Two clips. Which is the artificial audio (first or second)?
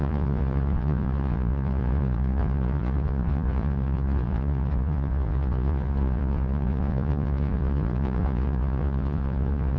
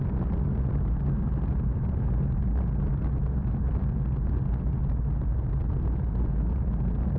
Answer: first